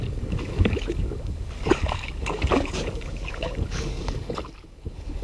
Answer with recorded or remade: remade